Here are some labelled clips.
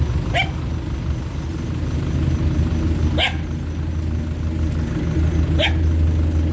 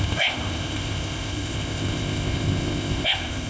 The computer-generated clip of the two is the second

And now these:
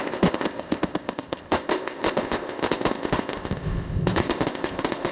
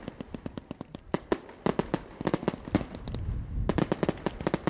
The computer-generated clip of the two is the first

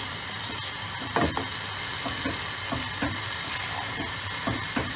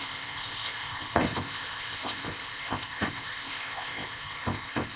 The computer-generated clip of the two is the second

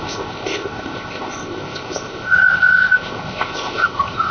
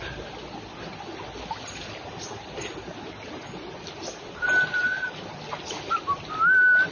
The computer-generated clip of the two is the first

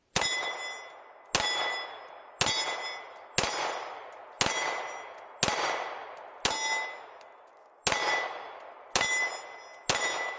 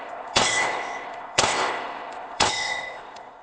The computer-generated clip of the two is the second